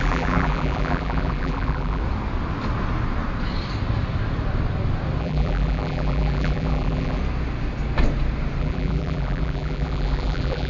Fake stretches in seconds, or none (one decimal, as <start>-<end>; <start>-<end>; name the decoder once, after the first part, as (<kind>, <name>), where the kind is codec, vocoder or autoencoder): 0.0-2.0 (vocoder, BigVGAN v2); 5.2-7.2; 8.6-10.7